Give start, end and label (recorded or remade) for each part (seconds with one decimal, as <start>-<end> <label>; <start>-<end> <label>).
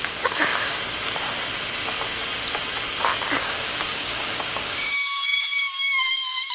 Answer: 0.0-0.8 remade; 0.8-3.4 recorded; 3.4-6.5 remade